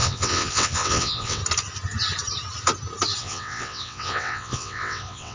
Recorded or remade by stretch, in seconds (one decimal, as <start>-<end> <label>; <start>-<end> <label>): 0.0-1.4 remade; 1.4-3.2 recorded; 3.2-5.3 remade